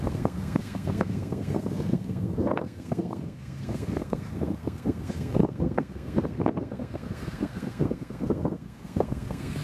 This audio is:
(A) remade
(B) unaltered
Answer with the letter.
A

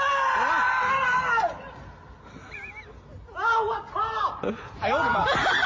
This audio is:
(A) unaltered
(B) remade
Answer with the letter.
A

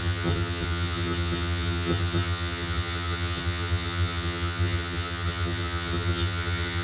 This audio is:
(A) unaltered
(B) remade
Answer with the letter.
B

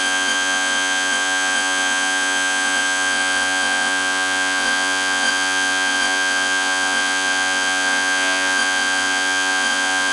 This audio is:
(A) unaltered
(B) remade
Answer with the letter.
B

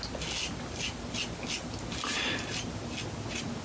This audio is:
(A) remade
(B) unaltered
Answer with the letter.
B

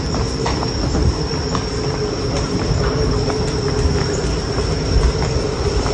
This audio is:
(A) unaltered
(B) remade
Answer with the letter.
A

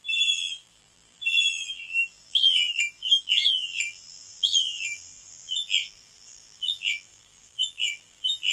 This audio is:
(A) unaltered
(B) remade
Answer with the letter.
B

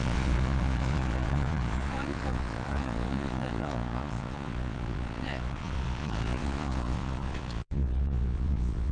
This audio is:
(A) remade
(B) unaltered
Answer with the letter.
A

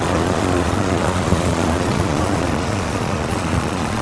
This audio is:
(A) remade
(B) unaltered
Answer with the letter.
A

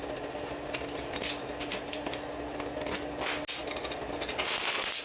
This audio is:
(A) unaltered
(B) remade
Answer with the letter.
A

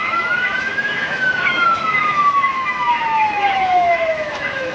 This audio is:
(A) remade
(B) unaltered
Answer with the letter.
A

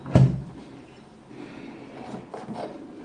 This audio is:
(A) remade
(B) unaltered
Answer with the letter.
B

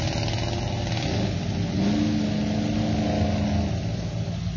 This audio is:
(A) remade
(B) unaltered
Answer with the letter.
B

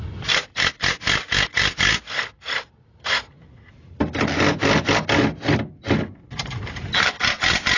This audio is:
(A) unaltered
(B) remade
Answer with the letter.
A